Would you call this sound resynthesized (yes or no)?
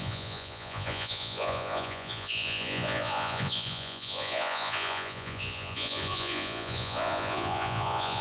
yes